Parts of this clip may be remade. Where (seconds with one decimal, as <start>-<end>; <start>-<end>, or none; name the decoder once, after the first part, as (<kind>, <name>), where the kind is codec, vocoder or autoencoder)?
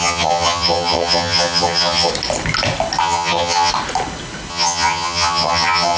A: 0.0-2.1 (vocoder, HiFi-GAN); 3.0-3.7; 4.5-6.0